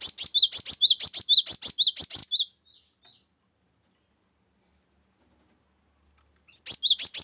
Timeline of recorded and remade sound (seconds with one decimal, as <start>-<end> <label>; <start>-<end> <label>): 0.0-7.2 recorded